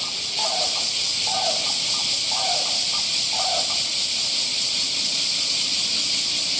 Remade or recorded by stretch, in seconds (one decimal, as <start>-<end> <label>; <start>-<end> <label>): 0.0-2.0 recorded; 2.0-5.7 remade; 5.7-6.6 recorded